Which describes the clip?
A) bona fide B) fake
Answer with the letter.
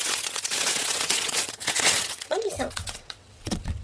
B